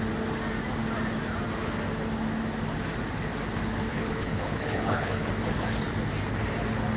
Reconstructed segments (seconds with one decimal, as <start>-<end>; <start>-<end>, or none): 3.9-5.3